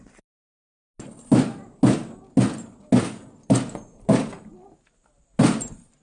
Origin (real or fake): real